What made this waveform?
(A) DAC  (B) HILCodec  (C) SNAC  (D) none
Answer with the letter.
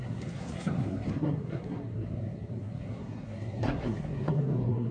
C